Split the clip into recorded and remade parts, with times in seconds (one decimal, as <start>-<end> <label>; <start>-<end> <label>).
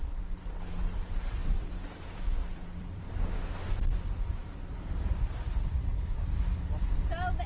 0.0-1.4 recorded; 1.4-3.0 remade; 3.0-7.5 recorded